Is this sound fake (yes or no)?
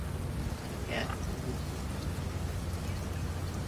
no